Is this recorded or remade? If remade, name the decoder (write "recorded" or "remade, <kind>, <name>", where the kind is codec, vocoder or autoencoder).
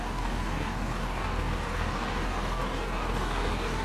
remade, codec, DAC